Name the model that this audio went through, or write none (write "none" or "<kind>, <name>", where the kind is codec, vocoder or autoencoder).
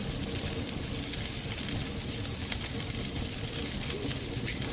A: none